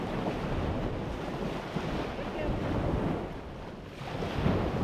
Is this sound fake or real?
real